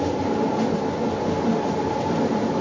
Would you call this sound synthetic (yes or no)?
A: no